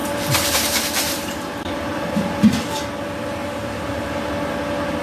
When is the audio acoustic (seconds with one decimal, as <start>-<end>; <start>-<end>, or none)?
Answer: 2.5-3.4; 4.3-5.0